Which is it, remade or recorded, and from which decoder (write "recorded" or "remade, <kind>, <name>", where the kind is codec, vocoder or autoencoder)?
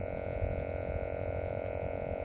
remade, vocoder, Vocos